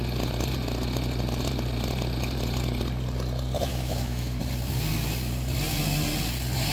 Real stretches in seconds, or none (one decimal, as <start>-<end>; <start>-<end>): 0.0-3.7; 4.4-6.7